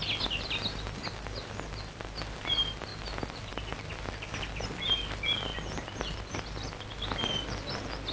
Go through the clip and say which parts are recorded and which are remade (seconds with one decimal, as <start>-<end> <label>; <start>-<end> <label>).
0.0-8.1 recorded